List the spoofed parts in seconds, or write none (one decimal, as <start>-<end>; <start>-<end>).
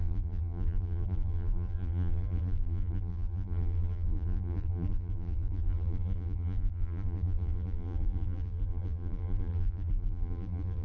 0.0-10.8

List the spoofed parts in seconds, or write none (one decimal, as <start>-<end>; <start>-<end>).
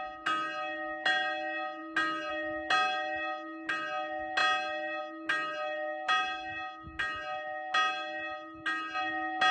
none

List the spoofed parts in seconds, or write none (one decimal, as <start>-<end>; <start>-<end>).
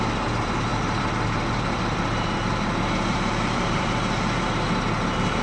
0.7-3.9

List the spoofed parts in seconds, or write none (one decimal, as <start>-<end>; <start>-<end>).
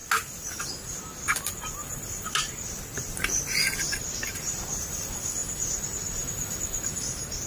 none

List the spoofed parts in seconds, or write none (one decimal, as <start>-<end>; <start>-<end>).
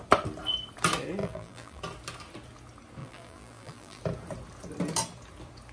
1.2-1.8; 3.0-4.0